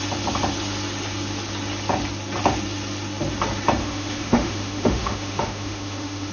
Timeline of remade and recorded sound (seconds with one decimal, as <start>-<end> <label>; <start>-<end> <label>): 0.0-3.8 recorded; 3.8-6.3 remade